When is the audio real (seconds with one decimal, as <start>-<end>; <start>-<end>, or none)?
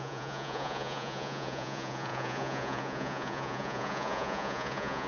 none